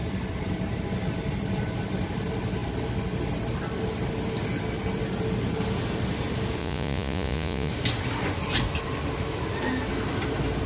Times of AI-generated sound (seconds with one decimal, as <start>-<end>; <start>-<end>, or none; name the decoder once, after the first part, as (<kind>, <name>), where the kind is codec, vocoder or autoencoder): 6.6-7.7 (vocoder, Vocos)